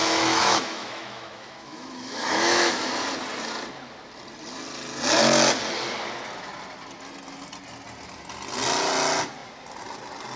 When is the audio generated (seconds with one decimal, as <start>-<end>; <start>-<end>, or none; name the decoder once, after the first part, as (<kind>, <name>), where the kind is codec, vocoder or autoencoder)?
0.0-2.9 (autoencoder, DAC-VAE)